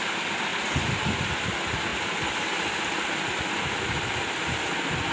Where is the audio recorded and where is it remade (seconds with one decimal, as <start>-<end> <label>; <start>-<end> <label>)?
0.0-5.1 recorded